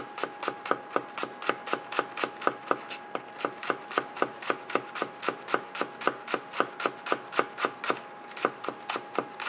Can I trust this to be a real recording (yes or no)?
yes